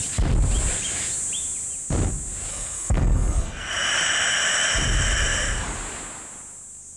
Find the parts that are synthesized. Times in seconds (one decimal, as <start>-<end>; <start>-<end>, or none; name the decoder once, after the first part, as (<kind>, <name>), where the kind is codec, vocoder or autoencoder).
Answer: 2.5-3.7 (codec, SNAC)